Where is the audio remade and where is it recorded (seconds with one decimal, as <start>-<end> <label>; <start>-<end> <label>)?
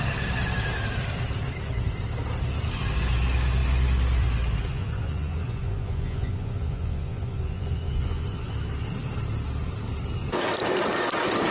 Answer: 0.0-4.7 recorded; 4.7-8.5 remade; 8.5-11.5 recorded